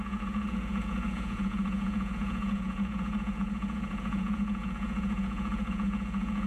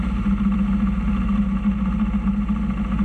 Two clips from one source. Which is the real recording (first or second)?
second